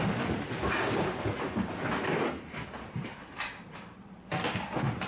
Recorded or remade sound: recorded